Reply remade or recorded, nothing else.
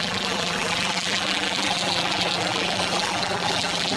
remade